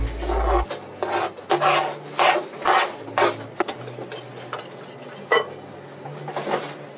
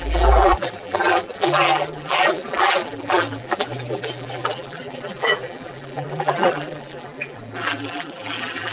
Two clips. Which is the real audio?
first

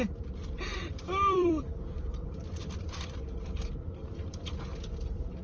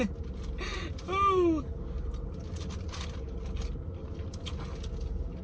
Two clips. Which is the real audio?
second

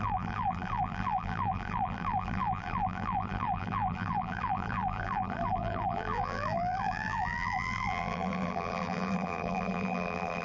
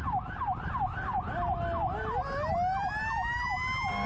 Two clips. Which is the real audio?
second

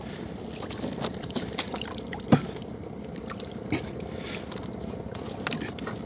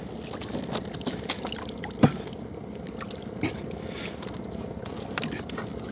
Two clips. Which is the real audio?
second